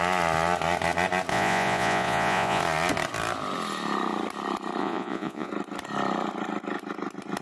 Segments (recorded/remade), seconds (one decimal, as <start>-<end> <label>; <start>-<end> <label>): 0.0-1.3 recorded; 1.3-2.6 remade; 2.6-4.8 recorded; 4.8-5.5 remade; 5.5-7.4 recorded